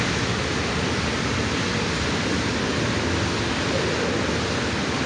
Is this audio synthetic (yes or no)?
no